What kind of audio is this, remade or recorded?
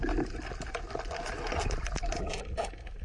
recorded